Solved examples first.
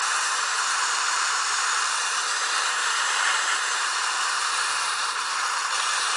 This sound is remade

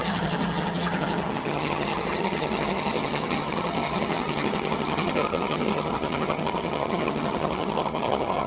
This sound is remade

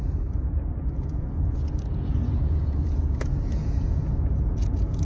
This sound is remade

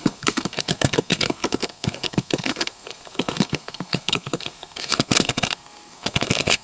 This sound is remade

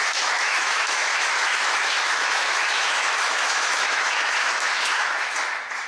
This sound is remade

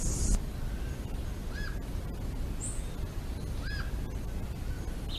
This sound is recorded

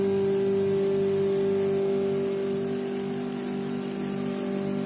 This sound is recorded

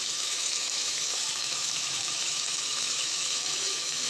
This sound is remade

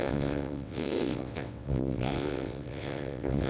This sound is remade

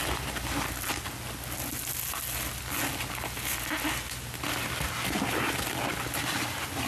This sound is recorded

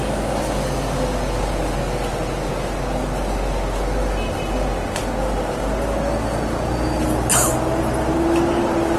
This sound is recorded